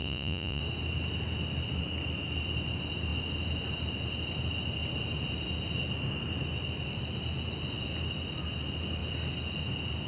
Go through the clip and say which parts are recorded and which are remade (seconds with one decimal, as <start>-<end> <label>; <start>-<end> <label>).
0.0-0.6 remade; 0.6-10.1 recorded